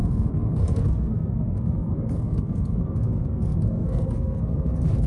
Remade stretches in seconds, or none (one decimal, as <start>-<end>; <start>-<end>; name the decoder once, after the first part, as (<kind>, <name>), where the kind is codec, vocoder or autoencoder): 0.0-5.1 (codec, SNAC)